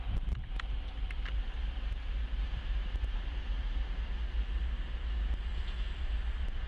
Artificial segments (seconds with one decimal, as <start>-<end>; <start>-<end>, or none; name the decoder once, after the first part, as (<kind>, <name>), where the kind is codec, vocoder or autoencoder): 0.0-4.0 (vocoder, BigVGAN v2)